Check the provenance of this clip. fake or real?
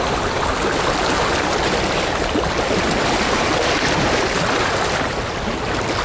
real